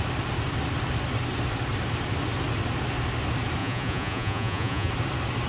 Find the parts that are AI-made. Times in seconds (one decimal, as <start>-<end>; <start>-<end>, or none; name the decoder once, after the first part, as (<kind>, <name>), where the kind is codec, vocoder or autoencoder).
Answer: 3.6-4.9 (vocoder, Vocos)